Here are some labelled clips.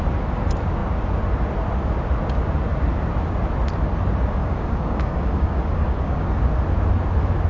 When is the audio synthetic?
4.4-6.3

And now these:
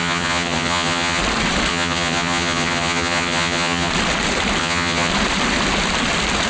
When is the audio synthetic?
0.0-1.2; 1.7-3.9; 4.6-5.1